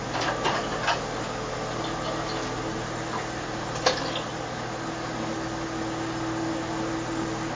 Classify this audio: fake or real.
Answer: real